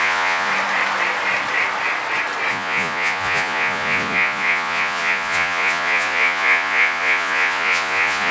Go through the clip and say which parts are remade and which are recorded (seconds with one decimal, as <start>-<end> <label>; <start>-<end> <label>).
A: 0.0-0.5 remade; 0.5-2.5 recorded; 2.5-8.3 remade